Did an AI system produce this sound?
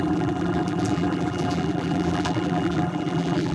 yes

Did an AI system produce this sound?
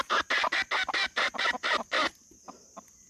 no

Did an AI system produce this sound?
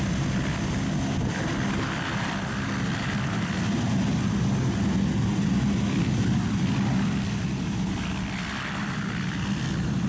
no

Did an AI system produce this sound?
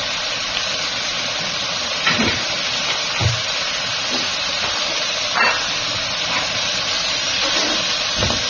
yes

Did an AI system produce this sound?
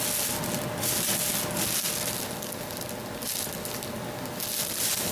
no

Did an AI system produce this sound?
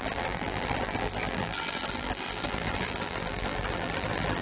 yes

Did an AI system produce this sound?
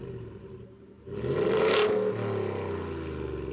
no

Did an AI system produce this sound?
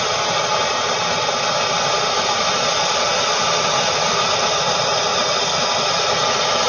no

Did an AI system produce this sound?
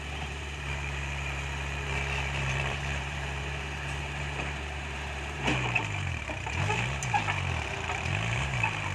yes